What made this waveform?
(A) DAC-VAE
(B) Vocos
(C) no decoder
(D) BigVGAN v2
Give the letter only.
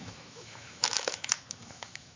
A